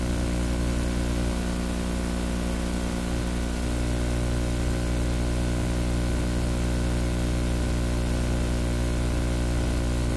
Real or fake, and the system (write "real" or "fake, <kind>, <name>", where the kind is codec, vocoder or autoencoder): real